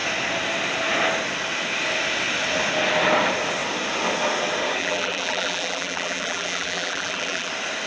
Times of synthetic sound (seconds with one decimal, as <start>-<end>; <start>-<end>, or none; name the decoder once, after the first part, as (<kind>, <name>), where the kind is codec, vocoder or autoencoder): 4.8-7.5 (vocoder, BigVGAN v2)